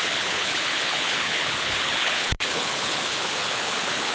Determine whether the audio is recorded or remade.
remade